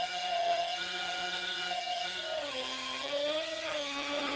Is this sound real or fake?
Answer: fake